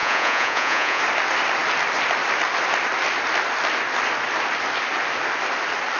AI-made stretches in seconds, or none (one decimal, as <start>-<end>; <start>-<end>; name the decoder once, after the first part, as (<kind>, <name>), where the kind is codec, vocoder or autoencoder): 0.0-1.0 (vocoder, Vocos)